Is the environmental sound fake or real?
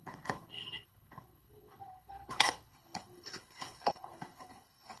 fake